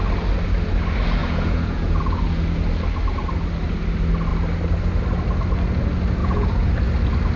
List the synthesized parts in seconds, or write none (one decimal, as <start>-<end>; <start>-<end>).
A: 1.2-2.0; 6.2-6.7